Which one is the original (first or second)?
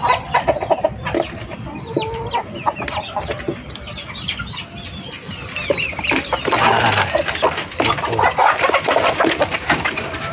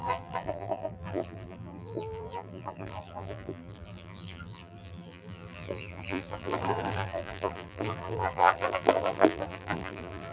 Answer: first